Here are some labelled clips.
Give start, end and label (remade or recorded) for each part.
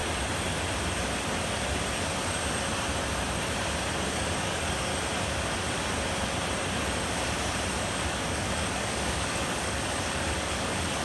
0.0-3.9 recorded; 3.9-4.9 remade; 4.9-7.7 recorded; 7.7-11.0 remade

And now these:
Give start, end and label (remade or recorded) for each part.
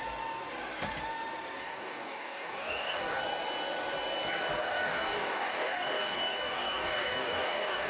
0.0-1.6 recorded; 1.6-3.2 remade; 3.2-4.6 recorded; 4.6-7.9 remade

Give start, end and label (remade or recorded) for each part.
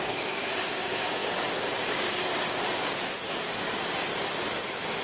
0.0-1.2 remade; 1.2-1.8 recorded; 1.8-4.1 remade; 4.1-5.0 recorded